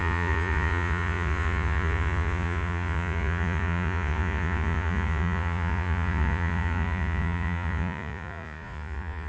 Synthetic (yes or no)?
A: yes